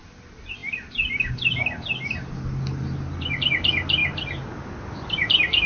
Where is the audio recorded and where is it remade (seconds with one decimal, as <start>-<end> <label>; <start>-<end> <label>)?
0.0-5.7 recorded